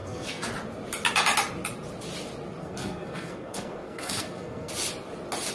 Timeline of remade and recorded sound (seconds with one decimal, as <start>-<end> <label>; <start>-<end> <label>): 0.0-0.5 remade; 0.5-2.6 recorded; 2.6-4.7 remade; 4.7-5.5 recorded